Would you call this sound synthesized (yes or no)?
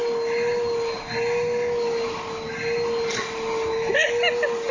no